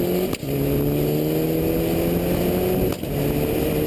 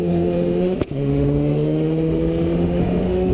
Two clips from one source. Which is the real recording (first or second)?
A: first